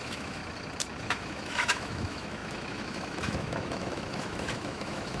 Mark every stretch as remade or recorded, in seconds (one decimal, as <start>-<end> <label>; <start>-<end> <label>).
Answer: 0.0-0.4 remade; 0.4-1.0 recorded; 1.0-5.2 remade